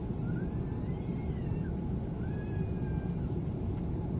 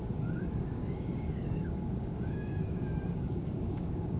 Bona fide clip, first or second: first